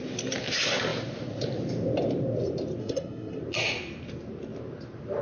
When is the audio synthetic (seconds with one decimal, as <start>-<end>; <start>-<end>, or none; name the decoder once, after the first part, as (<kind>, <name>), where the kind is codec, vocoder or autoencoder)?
2.8-3.4 (codec, SNAC)